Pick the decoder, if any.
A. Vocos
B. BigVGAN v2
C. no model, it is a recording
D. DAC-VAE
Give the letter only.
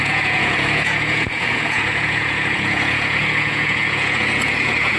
A